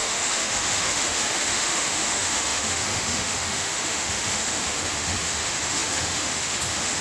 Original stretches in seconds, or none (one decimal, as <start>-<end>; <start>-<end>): none